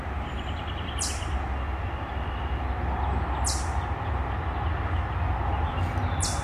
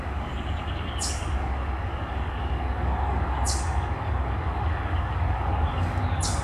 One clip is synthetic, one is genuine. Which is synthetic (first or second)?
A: second